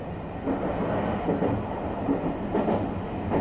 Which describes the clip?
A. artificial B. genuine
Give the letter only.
B